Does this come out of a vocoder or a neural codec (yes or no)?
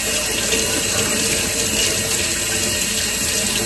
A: no